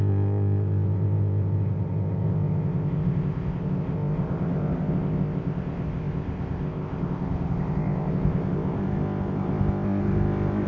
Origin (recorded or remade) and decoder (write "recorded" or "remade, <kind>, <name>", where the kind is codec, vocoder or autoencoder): remade, codec, ZipCodec